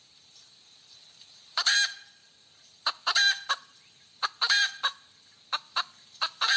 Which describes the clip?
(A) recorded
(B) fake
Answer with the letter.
B